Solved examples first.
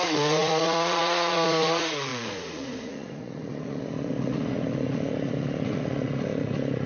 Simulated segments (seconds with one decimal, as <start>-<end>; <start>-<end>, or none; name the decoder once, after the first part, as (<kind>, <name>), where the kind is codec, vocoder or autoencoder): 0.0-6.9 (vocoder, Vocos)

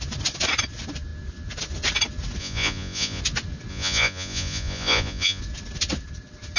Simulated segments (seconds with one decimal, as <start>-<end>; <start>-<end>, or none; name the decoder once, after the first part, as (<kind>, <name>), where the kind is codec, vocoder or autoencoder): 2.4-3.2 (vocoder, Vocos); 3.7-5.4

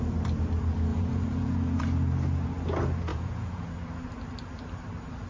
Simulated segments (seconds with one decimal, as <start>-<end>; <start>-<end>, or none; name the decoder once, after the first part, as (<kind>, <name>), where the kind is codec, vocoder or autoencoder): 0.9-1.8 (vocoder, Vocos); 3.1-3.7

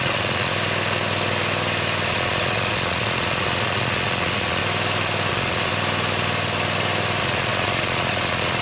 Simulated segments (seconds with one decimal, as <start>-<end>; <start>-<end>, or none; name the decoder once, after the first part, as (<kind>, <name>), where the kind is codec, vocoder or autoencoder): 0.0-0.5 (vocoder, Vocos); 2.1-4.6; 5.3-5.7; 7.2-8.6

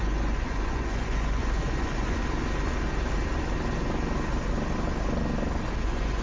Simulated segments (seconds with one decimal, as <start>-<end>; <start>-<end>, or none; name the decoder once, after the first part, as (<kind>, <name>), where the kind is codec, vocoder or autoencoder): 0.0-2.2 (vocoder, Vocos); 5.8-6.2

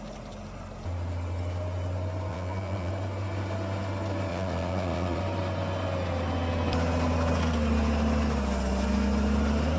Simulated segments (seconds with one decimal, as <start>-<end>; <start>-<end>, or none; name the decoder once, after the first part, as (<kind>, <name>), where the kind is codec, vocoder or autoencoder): 2.3-2.9 (vocoder, Vocos); 4.3-5.2

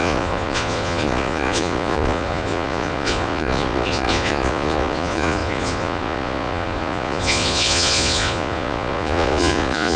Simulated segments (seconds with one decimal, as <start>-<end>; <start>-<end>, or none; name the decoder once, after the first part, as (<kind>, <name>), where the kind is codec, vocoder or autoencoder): 0.0-10.0 (vocoder, Vocos)

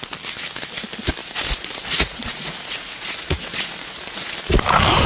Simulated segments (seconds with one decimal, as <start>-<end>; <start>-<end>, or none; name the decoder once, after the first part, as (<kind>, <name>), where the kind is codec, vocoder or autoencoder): 1.2-4.3 (vocoder, Vocos)